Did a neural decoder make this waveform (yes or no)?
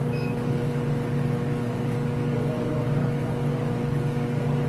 yes